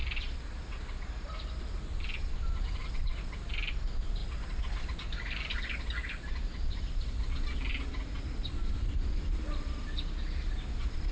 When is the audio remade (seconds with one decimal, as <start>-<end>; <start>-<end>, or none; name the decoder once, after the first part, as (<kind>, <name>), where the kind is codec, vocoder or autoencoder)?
none